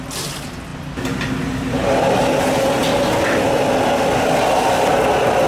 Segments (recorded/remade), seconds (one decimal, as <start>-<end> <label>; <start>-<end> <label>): 0.0-5.5 recorded